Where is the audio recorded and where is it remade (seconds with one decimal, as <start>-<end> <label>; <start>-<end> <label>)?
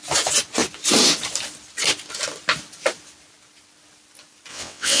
0.0-4.5 recorded; 4.5-5.0 remade